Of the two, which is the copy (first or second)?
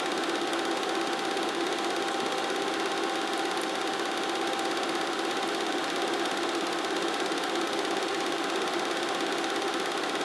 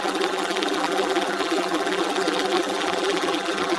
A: second